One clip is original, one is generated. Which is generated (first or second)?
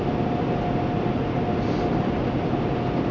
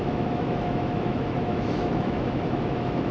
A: second